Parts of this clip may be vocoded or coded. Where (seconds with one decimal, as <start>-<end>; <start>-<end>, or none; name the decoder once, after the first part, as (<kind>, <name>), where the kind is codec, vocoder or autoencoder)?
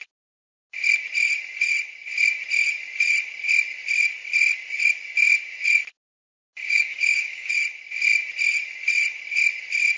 6.6-7.5 (codec, DAC)